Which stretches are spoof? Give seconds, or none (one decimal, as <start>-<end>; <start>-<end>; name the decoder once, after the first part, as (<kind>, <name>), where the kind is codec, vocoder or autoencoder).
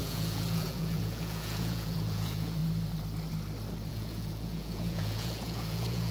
0.0-2.6 (vocoder, Vocos); 3.9-6.1